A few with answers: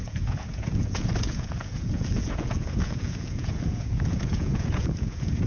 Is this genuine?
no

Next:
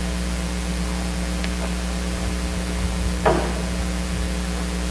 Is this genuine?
yes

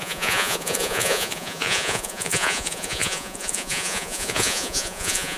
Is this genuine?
no